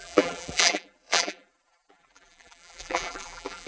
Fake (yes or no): yes